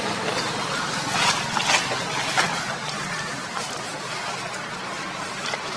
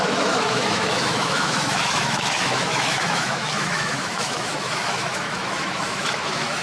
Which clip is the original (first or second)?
first